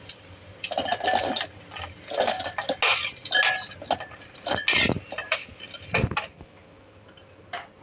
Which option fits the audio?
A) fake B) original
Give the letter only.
B